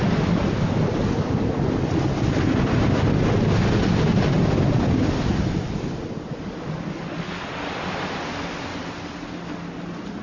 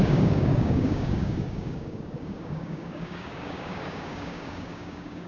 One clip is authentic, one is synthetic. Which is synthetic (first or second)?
second